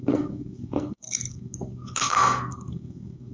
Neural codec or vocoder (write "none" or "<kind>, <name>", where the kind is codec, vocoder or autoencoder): codec, SNAC